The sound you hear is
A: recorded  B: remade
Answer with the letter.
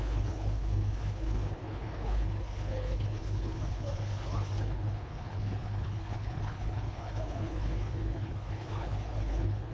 B